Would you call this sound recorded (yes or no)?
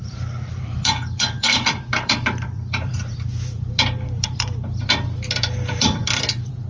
no